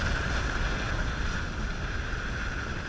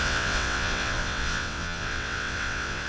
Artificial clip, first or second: second